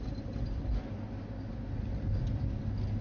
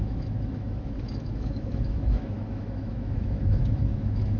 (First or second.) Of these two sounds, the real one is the first